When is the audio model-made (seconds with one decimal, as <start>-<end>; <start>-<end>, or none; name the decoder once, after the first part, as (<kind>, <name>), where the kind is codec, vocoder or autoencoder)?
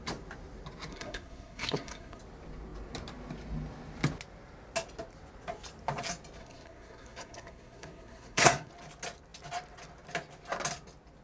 0.9-2.2 (codec, SNAC); 6.4-8.7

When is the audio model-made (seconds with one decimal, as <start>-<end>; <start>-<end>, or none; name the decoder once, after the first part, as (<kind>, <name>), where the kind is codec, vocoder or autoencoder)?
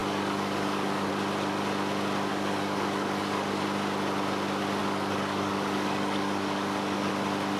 0.0-1.1 (codec, DAC); 2.3-3.6; 4.8-7.1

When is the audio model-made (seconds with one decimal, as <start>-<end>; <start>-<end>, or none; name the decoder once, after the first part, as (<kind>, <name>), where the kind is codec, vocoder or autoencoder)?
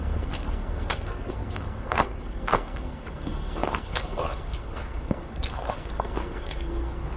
0.0-7.2 (codec, SNAC)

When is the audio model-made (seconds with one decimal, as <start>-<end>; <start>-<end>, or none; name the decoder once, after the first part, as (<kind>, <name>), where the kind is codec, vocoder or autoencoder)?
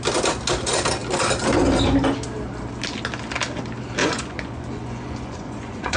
4.0-6.0 (vocoder, Vocos)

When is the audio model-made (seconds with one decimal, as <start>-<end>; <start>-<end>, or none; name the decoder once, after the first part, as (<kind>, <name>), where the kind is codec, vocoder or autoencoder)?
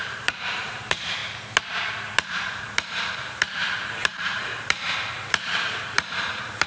0.0-1.2 (vocoder, BigVGAN v2); 2.3-6.7